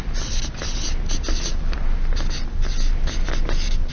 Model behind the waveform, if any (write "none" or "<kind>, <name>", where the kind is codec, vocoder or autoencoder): none